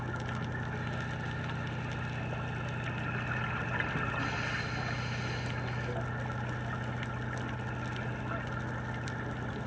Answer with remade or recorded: recorded